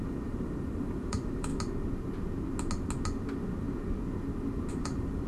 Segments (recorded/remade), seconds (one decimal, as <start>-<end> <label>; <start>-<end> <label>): 0.0-1.5 remade; 1.5-4.7 recorded; 4.7-5.3 remade